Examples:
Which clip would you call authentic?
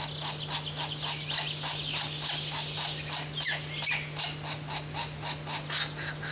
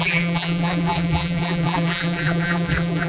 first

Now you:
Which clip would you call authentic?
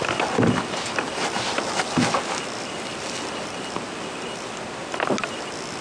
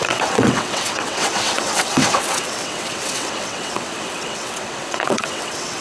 first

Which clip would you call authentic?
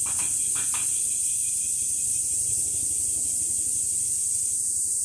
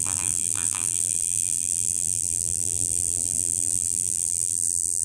first